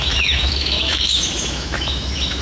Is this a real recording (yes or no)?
no